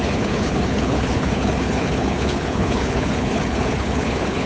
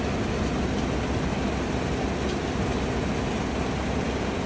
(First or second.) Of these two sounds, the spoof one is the first